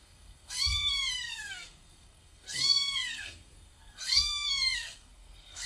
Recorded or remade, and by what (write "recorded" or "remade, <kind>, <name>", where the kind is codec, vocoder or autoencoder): remade, codec, SNAC